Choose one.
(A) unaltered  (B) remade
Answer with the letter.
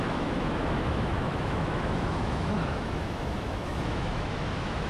B